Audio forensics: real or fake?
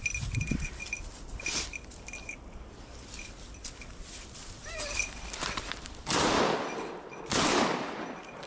real